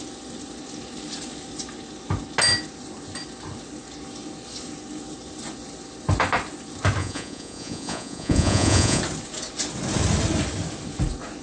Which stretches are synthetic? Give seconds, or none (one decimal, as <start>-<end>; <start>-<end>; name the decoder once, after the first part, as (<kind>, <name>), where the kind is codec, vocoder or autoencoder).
7.0-9.0 (vocoder, Vocos)